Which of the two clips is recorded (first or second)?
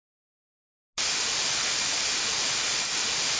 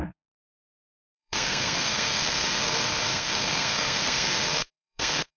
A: first